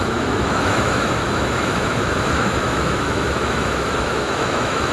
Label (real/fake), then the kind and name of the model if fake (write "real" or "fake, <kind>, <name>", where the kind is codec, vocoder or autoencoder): fake, autoencoder, DAC-VAE